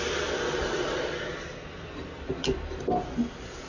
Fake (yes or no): no